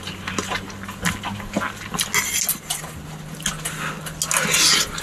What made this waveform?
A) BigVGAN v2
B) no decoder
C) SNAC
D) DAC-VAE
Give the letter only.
B